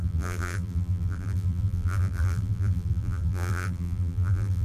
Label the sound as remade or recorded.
remade